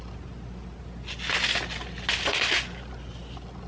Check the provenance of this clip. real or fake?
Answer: real